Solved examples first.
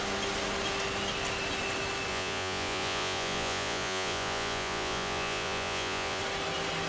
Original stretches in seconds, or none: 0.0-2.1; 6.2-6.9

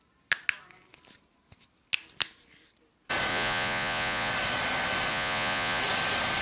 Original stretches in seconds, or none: 0.0-3.3; 4.3-5.1; 5.8-6.4

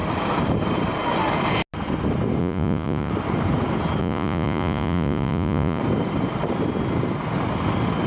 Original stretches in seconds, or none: 0.0-2.4; 3.1-4.0; 5.8-8.1

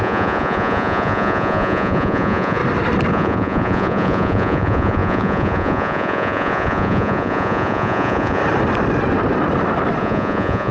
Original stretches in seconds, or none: 2.6-3.1; 8.4-10.0

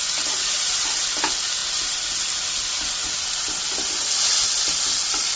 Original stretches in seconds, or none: 0.0-5.4

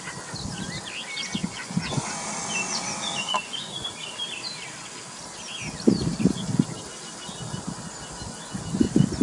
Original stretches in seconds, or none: 0.0-1.4; 2.1-3.2; 3.9-9.2